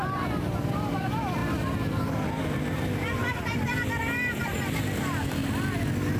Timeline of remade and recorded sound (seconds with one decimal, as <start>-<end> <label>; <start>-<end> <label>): 0.0-1.4 remade; 1.4-2.0 recorded; 2.0-3.2 remade; 3.2-4.0 recorded; 4.0-4.4 remade; 4.4-5.0 recorded; 5.0-5.4 remade; 5.4-6.2 recorded